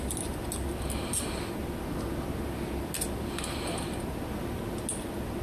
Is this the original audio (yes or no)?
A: yes